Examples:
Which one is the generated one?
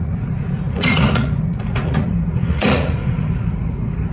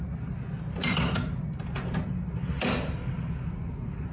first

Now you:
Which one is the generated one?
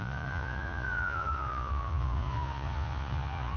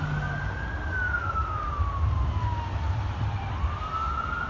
first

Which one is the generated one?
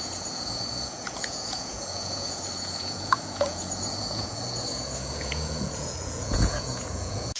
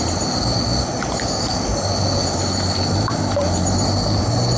first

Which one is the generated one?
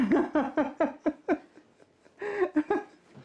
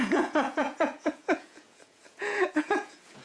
second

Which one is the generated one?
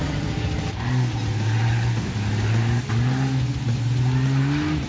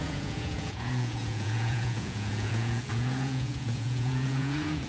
second